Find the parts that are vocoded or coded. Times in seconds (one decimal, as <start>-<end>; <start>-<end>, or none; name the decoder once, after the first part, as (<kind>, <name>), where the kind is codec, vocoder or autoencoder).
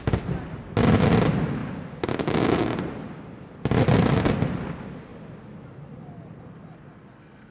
none